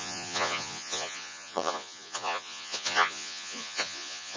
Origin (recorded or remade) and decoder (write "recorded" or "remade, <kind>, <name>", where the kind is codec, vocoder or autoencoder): remade, vocoder, Vocos